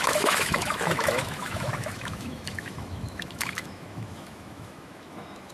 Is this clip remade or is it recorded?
remade